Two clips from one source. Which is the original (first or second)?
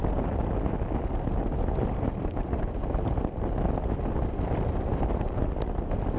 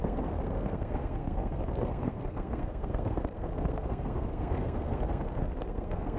first